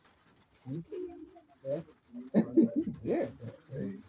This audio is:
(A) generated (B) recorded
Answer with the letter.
A